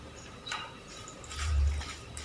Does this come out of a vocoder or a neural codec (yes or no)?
yes